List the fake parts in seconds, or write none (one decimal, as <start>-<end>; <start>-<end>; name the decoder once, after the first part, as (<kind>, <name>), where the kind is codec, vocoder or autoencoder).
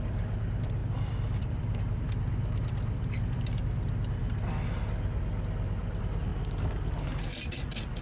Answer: 0.0-4.2 (vocoder, BigVGAN v2); 5.8-6.3; 7.5-8.0